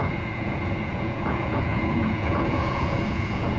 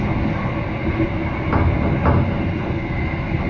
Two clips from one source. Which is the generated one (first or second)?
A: first